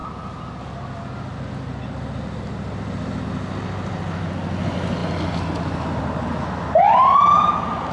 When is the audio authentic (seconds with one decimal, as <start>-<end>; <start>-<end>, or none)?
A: 0.0-7.9